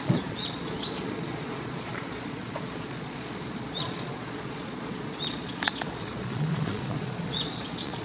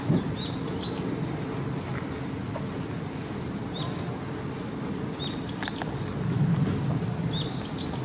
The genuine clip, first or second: second